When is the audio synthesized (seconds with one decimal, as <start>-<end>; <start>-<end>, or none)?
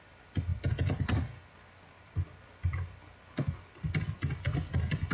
none